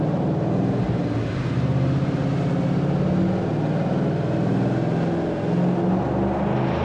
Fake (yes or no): no